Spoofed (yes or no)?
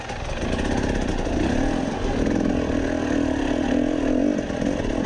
no